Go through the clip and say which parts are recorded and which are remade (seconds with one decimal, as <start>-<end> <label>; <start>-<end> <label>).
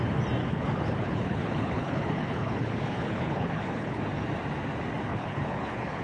0.0-0.4 recorded; 0.4-4.0 remade; 4.0-5.1 recorded; 5.1-6.0 remade